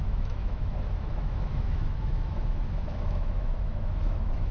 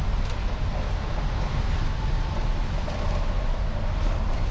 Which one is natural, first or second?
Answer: second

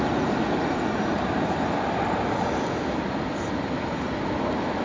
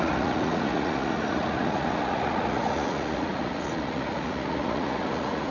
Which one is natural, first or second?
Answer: first